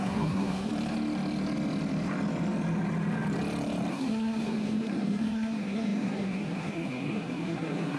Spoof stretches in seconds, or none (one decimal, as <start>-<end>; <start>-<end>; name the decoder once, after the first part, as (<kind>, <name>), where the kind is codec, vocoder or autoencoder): 0.0-0.7 (codec, SNAC); 3.9-8.0